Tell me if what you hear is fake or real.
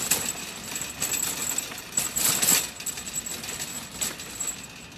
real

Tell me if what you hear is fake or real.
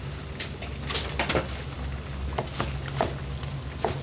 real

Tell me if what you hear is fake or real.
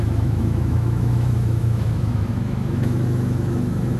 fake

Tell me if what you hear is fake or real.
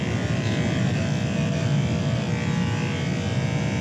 real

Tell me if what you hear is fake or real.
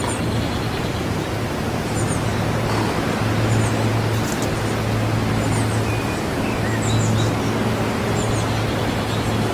real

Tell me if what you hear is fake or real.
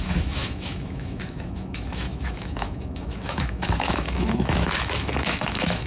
fake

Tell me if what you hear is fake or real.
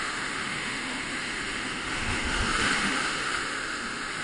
fake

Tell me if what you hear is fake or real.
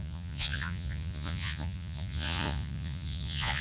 fake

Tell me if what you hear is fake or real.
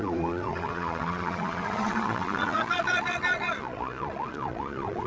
fake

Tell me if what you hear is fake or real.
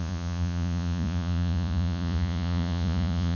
fake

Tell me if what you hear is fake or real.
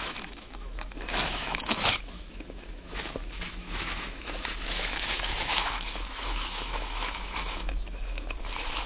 fake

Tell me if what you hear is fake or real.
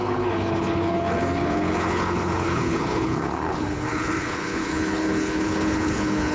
fake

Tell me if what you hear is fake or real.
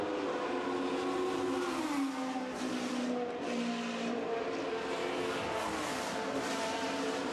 real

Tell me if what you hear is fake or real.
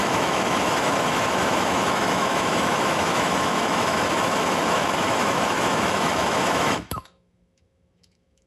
fake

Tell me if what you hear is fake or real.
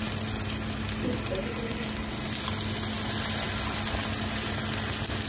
real